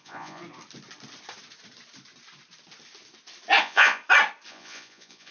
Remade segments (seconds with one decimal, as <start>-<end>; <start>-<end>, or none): 0.0-0.4; 3.6-4.0; 4.5-5.3